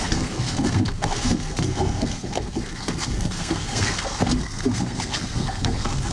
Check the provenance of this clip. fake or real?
fake